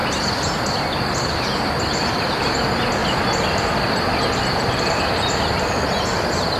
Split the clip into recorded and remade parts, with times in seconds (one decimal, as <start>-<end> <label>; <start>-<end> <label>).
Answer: 0.0-6.6 recorded